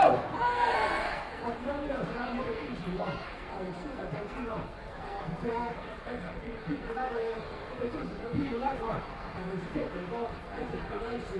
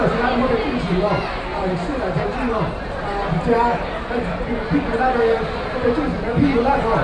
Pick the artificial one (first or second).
first